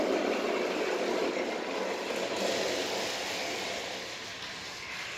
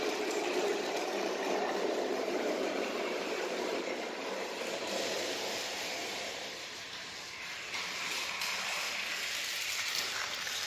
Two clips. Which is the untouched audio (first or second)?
first